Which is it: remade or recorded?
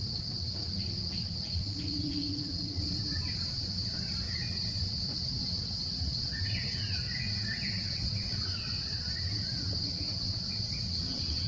remade